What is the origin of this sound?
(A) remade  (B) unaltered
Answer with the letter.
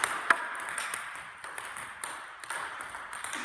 B